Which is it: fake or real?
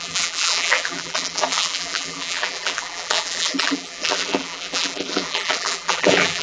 fake